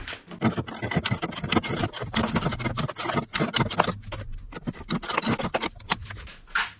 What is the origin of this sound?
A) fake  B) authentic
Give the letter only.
B